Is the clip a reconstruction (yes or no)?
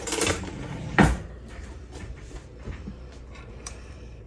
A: yes